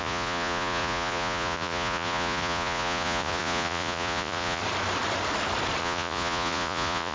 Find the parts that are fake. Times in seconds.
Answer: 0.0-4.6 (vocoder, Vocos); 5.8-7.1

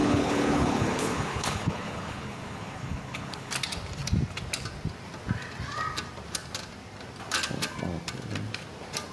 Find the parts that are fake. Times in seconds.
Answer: 0.0-3.5 (codec, HILCodec)

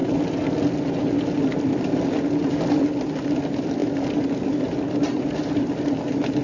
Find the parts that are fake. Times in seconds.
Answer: none

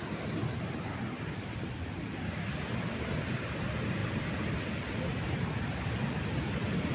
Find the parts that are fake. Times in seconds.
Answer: none